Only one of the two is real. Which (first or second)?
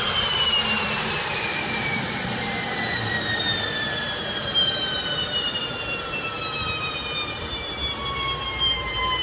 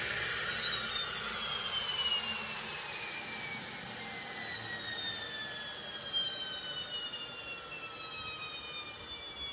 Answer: second